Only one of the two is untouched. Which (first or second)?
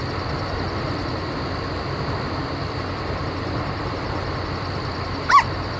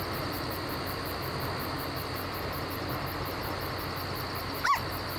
second